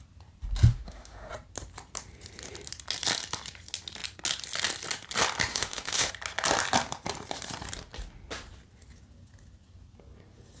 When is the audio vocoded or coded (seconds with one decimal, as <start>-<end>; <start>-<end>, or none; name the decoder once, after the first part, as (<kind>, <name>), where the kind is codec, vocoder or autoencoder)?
0.7-1.3 (autoencoder, DAC-VAE); 5.5-6.1